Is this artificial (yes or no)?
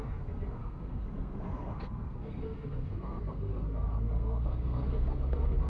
yes